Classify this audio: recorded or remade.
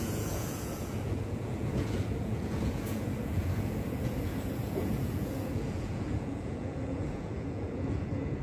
remade